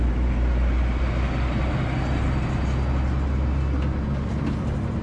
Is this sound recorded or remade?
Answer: recorded